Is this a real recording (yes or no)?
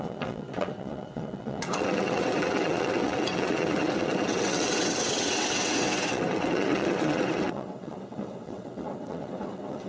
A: no